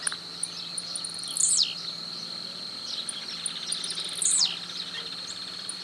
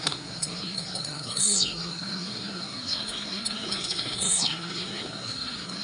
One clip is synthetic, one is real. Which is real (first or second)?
first